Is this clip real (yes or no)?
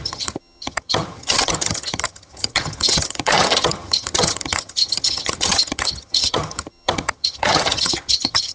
no